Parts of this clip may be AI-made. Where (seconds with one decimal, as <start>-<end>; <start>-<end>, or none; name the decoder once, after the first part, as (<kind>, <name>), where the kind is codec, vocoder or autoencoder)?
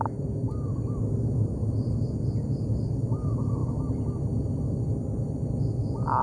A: none